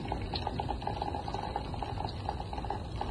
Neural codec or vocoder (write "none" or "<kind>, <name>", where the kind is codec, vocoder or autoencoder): none